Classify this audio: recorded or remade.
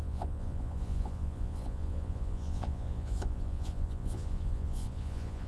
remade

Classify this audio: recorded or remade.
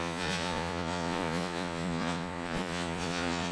remade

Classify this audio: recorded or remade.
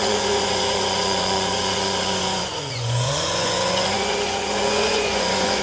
remade